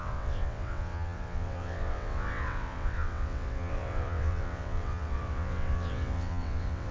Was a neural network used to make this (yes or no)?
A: yes